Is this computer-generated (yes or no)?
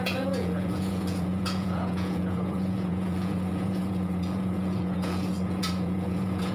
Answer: yes